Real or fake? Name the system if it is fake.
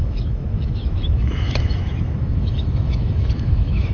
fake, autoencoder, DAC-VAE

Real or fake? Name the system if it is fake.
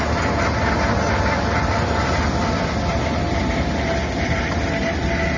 real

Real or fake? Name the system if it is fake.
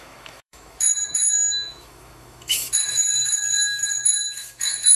fake, autoencoder, DAC-VAE